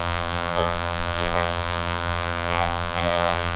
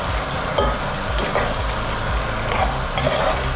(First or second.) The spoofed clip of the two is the first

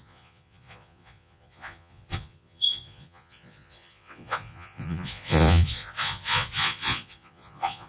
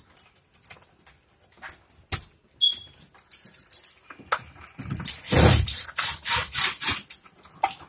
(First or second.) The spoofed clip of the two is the first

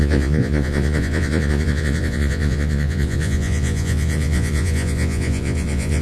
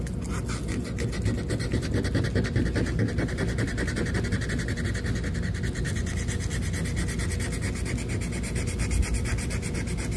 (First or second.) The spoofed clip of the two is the first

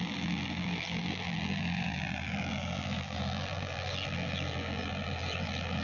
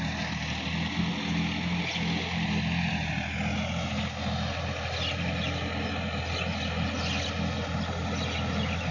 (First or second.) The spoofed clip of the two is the first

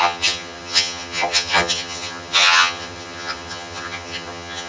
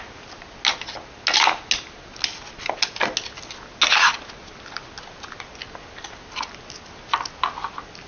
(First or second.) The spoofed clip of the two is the first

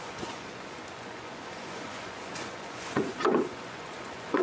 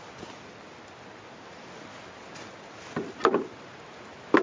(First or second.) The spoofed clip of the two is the first